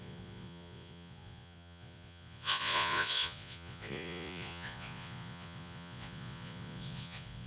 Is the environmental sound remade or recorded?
remade